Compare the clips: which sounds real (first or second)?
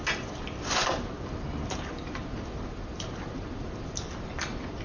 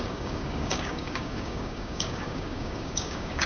first